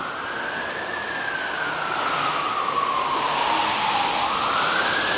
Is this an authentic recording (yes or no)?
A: yes